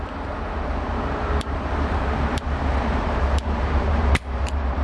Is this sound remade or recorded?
remade